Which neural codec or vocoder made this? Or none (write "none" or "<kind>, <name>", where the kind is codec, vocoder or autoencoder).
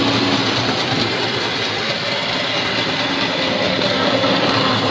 none